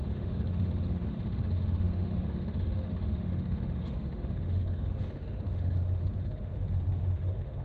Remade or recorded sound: remade